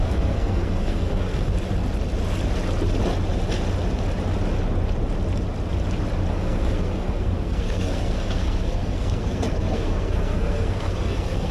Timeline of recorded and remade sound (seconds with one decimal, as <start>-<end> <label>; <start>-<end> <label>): 0.0-1.5 remade; 1.5-6.3 recorded; 6.3-11.5 remade